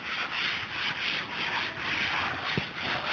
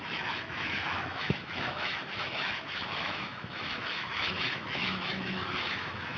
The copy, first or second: second